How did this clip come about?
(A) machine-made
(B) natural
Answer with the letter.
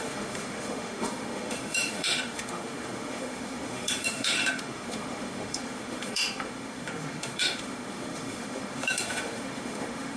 A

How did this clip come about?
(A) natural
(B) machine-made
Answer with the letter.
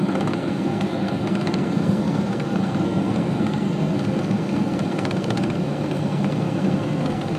B